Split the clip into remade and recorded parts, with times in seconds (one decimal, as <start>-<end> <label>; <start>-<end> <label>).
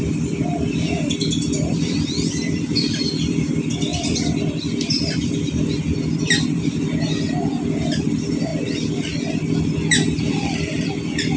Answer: 0.0-8.5 remade; 8.5-9.9 recorded; 9.9-11.4 remade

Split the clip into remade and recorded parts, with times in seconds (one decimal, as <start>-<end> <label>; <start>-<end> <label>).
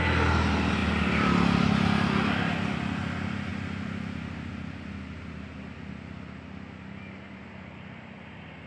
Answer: 0.0-8.7 recorded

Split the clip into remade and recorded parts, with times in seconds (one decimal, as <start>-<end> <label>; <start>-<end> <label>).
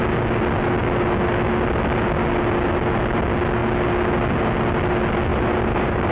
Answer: 0.0-5.3 recorded; 5.3-6.1 remade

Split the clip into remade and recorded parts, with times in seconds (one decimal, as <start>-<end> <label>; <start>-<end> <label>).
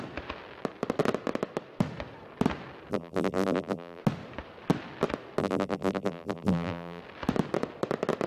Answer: 0.0-2.9 recorded; 2.9-4.0 remade; 4.0-5.4 recorded; 5.4-7.0 remade; 7.0-8.3 recorded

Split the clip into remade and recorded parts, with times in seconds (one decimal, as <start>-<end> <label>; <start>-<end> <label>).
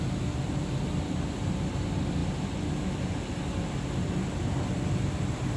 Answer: 0.0-5.6 recorded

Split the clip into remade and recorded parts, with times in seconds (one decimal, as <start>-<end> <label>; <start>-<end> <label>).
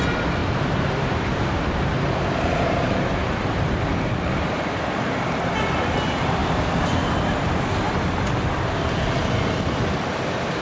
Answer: 0.0-0.4 recorded; 0.4-4.2 remade; 4.2-10.6 recorded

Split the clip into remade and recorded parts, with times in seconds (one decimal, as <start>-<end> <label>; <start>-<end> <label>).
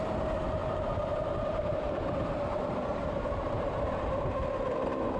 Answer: 0.0-0.6 recorded; 0.6-3.7 remade; 3.7-5.2 recorded